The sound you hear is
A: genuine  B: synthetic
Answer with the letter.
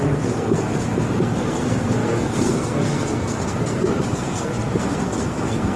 B